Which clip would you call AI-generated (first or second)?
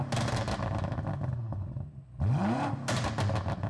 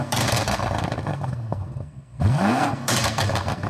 second